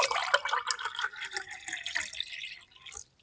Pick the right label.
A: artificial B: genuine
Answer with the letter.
B